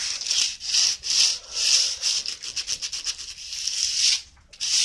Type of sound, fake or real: real